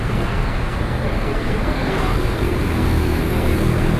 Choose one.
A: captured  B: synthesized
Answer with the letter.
B